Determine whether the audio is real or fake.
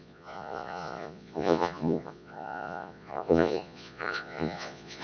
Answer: fake